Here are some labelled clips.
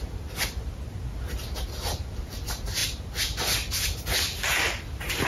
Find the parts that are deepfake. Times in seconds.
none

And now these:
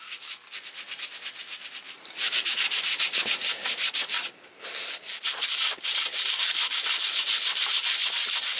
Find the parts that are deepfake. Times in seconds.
1.4-4.7 (vocoder, BigVGAN v2)

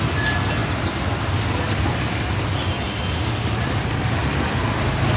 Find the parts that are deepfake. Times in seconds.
none

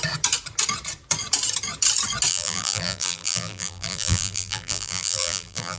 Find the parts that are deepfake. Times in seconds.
2.3-5.8 (vocoder, BigVGAN v2)

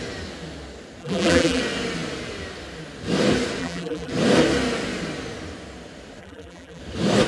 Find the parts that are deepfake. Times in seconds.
1.0-1.6 (vocoder, BigVGAN v2); 3.6-4.1; 6.2-6.8

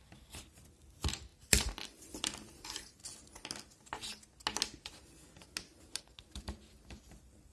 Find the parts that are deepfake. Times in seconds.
0.0-3.0 (vocoder, BigVGAN v2); 6.0-7.5

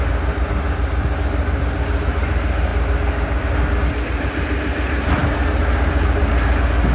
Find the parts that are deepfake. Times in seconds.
none

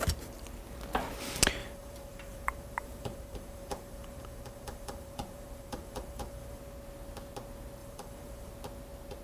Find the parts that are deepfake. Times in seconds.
1.6-6.6 (vocoder, BigVGAN v2); 7.8-8.5